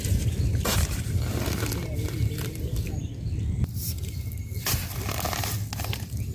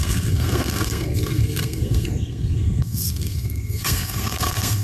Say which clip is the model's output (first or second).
second